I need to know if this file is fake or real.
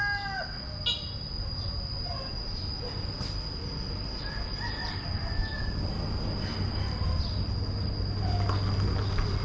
real